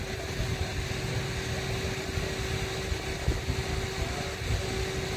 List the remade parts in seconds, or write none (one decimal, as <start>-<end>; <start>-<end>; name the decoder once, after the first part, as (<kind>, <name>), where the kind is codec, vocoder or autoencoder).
none